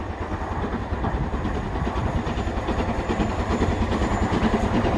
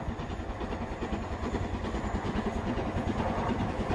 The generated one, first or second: second